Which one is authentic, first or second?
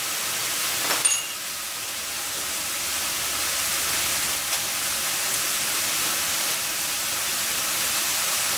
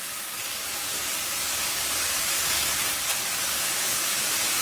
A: first